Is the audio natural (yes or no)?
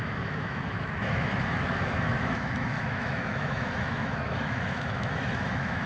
no